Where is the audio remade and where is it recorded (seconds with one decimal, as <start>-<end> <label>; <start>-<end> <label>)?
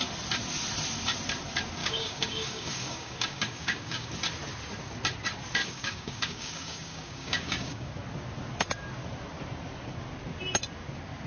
0.0-1.8 recorded; 1.8-4.1 remade; 4.1-5.6 recorded; 5.6-7.9 remade; 7.9-11.3 recorded